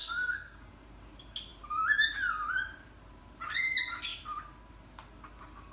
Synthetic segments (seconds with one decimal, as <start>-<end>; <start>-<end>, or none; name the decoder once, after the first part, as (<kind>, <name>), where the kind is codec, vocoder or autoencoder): 0.0-0.6 (codec, SNAC)